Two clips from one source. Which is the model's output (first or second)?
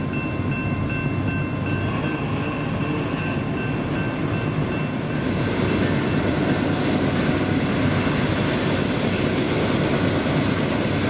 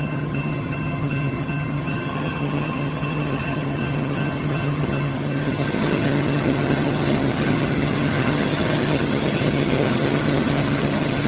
second